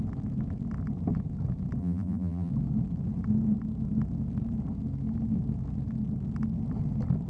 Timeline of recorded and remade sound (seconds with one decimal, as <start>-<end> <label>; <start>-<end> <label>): 0.0-1.8 recorded; 1.8-2.5 remade; 2.5-7.3 recorded